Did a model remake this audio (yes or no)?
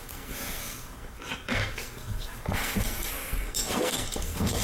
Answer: yes